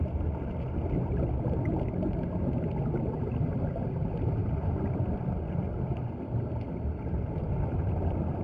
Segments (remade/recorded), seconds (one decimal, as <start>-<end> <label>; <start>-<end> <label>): 0.0-8.4 recorded